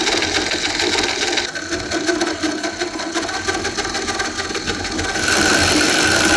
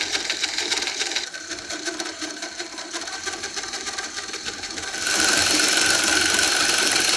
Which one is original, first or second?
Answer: first